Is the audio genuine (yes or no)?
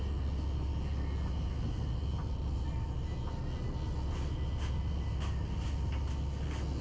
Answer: yes